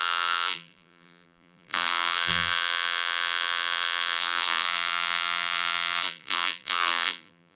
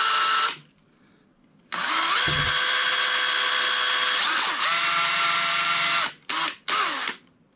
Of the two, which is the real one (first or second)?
second